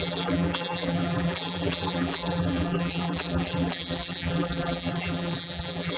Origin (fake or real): fake